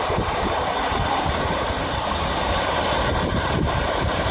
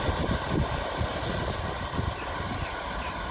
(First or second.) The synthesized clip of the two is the first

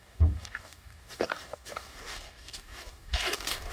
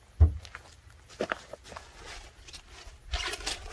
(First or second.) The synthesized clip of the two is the first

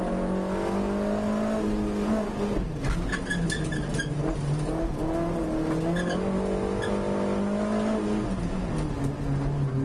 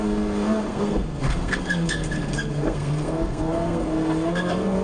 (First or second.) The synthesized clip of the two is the second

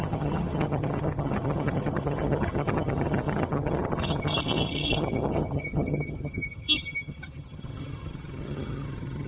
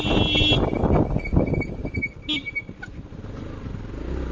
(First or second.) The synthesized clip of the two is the first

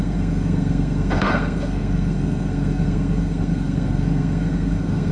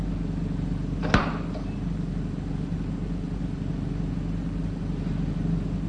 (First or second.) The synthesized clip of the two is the first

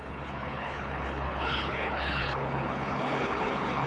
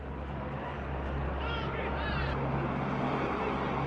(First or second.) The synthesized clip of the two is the first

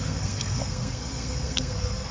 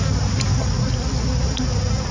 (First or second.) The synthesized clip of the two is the first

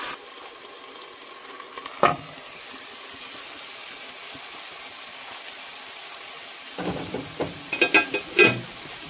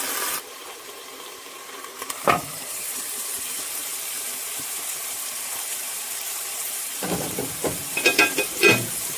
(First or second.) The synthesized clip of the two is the second